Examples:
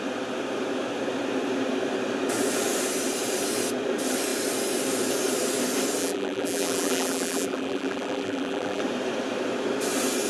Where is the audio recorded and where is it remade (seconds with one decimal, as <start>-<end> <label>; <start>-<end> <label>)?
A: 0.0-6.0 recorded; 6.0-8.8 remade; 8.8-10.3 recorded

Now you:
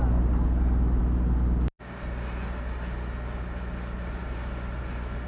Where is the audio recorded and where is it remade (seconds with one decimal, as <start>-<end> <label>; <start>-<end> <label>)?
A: 0.0-5.3 recorded

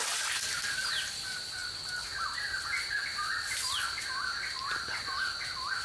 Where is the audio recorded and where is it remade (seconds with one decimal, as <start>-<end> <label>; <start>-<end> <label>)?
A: 0.0-5.8 recorded

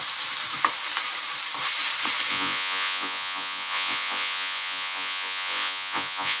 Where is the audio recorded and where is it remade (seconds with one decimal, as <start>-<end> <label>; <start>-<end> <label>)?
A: 0.0-2.3 recorded; 2.3-6.4 remade

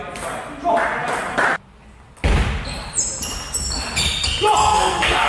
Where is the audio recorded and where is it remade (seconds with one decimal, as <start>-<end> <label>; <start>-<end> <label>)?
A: 0.0-4.7 recorded; 4.7-5.3 remade

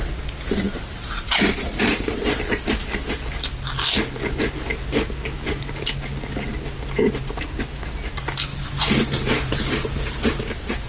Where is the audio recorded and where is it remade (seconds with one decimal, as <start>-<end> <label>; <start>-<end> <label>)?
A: 0.0-0.9 recorded; 0.9-2.2 remade; 2.2-8.5 recorded; 8.5-10.4 remade; 10.4-10.9 recorded

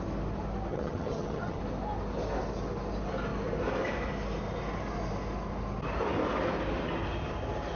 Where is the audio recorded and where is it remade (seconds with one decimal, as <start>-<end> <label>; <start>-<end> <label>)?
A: 0.0-0.7 recorded; 0.7-1.6 remade; 1.6-7.8 recorded

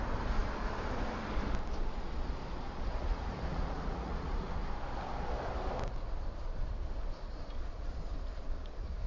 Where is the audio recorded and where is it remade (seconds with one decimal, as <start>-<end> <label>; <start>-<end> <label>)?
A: 0.0-2.9 recorded; 2.9-4.5 remade; 4.5-9.1 recorded